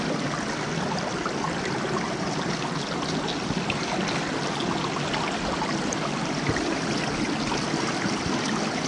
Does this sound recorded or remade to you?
recorded